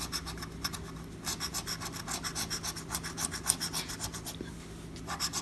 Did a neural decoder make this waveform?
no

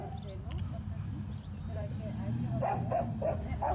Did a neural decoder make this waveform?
no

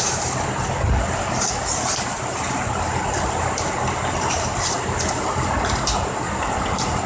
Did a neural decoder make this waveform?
no